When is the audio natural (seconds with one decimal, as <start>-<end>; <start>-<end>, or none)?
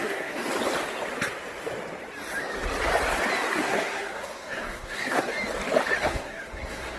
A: 0.4-3.5; 5.3-6.0